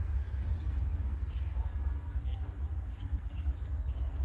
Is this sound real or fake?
fake